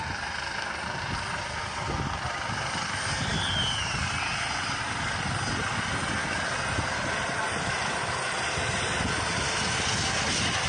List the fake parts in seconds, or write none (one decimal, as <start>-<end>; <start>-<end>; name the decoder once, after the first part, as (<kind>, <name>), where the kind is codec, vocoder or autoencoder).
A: none